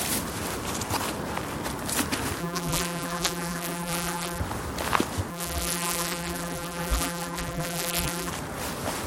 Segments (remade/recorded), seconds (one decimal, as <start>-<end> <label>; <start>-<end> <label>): 0.0-2.4 recorded; 2.4-4.4 remade; 4.4-5.3 recorded; 5.3-8.3 remade; 8.3-9.1 recorded